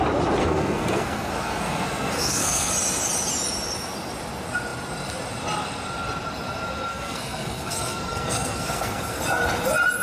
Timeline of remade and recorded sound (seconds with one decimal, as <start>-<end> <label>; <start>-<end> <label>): 0.0-0.4 recorded; 0.4-2.7 remade; 2.7-6.9 recorded; 6.9-9.2 remade; 9.2-10.0 recorded